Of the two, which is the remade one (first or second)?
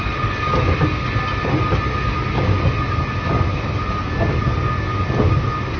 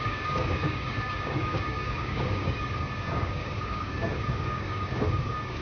second